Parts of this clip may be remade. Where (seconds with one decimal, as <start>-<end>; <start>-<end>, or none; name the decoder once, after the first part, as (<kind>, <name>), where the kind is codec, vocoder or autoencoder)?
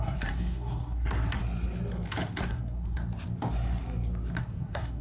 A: 0.0-1.4 (codec, SNAC); 2.4-3.0; 4.4-5.0